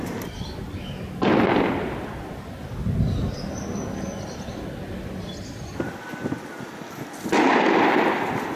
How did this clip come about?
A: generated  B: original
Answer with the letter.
B